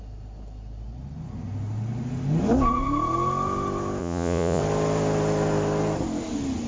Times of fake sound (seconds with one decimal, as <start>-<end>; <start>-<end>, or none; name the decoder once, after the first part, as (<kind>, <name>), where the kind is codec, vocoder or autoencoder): 4.0-4.6 (vocoder, Vocos)